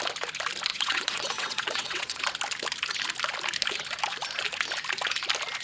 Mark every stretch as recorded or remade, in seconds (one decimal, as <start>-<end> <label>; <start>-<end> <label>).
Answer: 0.0-0.7 recorded; 0.7-2.2 remade; 2.2-5.6 recorded